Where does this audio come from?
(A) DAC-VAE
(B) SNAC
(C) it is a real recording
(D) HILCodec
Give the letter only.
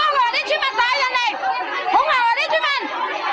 C